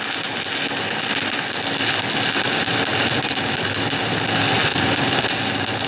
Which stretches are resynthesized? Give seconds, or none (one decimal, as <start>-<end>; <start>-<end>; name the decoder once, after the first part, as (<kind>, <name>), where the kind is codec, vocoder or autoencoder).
4.7-5.2 (vocoder, BigVGAN v2)